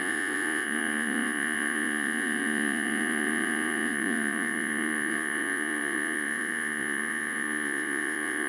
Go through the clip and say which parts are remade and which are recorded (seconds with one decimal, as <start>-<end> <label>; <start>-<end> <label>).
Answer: 0.0-8.5 remade